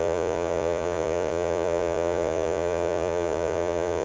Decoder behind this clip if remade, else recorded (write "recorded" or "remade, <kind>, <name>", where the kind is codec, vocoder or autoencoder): remade, vocoder, Vocos